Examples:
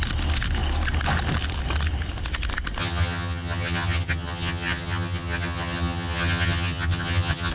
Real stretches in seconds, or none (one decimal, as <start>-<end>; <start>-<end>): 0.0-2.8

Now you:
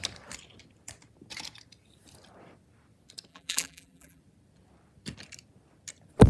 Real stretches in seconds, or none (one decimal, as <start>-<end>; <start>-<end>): 0.0-3.3; 4.2-6.3

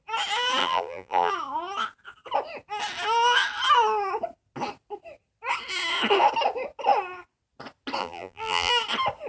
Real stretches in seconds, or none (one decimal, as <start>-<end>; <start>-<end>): 0.0-0.6; 1.3-8.0; 8.7-9.3

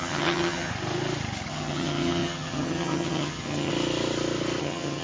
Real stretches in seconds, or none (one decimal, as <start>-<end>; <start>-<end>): 0.7-1.5; 3.7-4.6

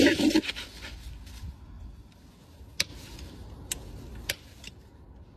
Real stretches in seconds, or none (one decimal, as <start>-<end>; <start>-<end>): 0.0-5.4

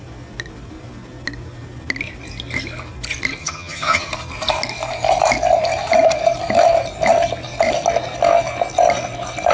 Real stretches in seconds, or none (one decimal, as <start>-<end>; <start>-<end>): 0.0-3.4; 4.1-9.5